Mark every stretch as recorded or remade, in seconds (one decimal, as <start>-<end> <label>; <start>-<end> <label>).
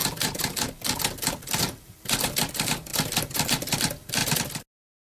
0.0-2.5 remade; 2.5-2.9 recorded; 2.9-3.8 remade; 3.8-5.1 recorded